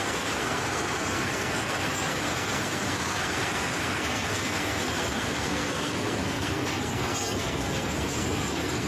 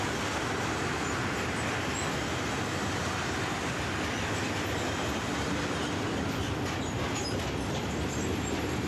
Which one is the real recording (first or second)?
second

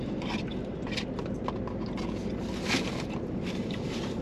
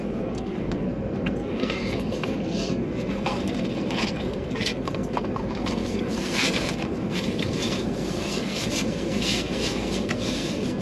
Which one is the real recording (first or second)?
first